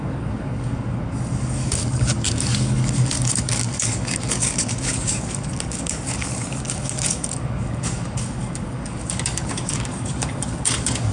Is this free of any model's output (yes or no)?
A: no